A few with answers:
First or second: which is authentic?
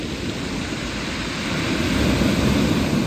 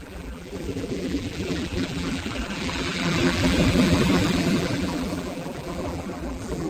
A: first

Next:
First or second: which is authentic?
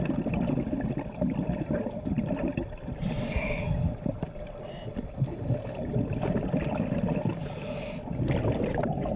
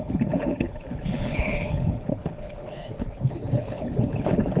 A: first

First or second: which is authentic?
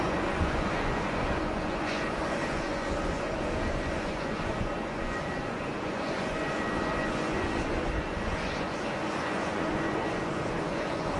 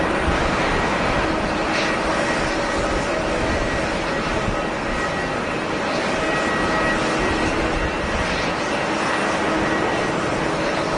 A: second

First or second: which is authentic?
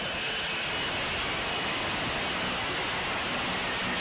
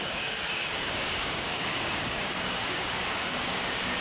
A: first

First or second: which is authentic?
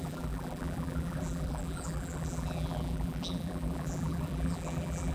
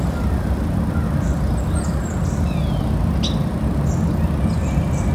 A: second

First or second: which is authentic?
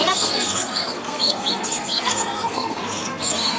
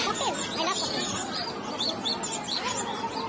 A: second